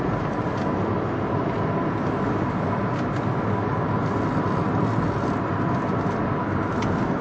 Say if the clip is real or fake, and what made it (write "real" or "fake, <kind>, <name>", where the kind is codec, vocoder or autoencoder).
real